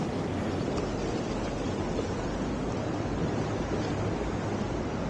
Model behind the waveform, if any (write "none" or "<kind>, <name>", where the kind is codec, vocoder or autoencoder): none